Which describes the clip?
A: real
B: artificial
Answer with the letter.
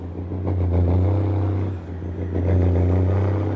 A